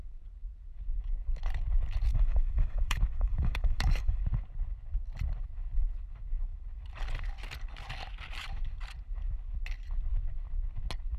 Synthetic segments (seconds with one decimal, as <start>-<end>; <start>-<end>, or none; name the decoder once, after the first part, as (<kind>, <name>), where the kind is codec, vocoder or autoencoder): 2.1-4.2 (codec, DAC)